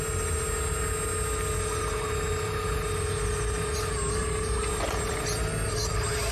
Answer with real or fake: real